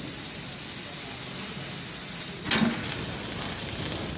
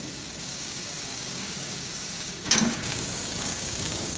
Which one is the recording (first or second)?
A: first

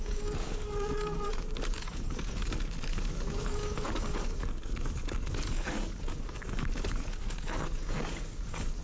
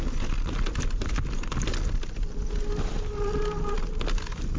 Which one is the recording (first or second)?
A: second